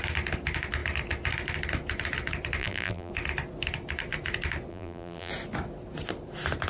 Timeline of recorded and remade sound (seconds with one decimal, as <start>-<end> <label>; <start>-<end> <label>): 0.0-2.6 recorded; 2.6-3.1 remade; 3.1-4.7 recorded; 4.7-5.3 remade; 5.3-6.7 recorded